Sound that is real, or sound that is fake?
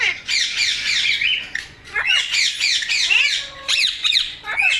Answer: fake